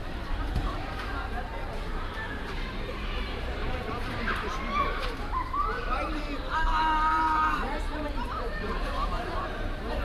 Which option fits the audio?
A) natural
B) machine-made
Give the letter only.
B